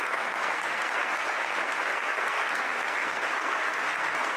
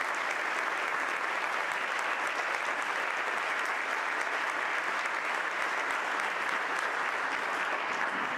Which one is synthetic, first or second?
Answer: first